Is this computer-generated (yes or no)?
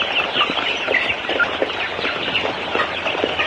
no